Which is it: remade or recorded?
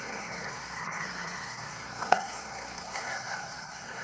remade